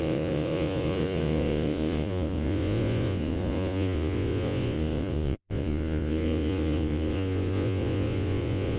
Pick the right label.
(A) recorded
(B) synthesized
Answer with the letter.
B